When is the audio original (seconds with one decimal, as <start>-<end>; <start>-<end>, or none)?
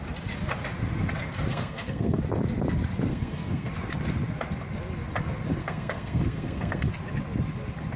0.0-1.5; 2.2-3.1; 3.7-5.6; 6.9-8.0